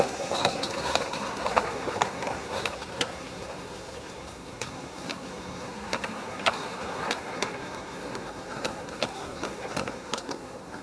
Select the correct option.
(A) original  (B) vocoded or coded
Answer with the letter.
B